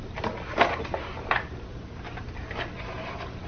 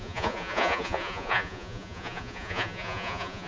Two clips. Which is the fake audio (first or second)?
second